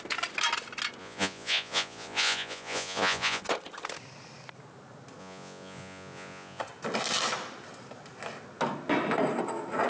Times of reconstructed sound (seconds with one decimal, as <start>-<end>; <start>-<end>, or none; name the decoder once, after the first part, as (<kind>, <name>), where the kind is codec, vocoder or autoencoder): 1.0-3.4 (vocoder, Vocos); 5.2-6.6